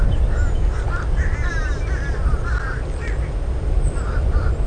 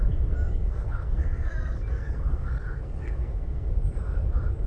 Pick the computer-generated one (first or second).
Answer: second